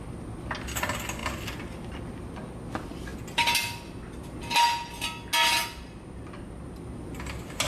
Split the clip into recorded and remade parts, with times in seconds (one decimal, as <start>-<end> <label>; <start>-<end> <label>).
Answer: 0.0-7.7 recorded